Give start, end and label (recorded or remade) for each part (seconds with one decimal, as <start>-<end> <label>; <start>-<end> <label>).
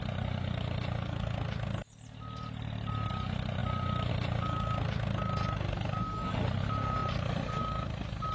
0.0-8.3 recorded